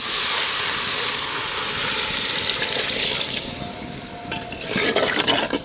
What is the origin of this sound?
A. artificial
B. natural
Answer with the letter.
B